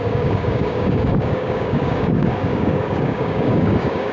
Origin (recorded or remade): remade